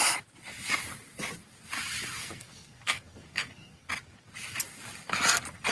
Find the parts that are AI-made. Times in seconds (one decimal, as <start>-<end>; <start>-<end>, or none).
2.2-3.9